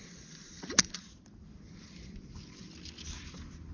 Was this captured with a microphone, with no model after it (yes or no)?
yes